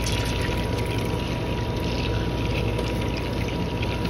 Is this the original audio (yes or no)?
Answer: yes